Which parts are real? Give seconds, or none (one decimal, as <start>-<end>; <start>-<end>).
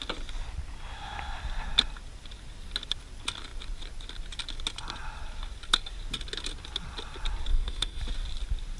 0.0-7.5; 8.0-8.8